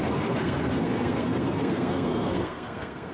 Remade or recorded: remade